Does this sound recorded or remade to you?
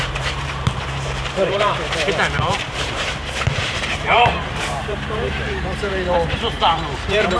remade